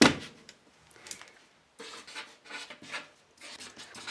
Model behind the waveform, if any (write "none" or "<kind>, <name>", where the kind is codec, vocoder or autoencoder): none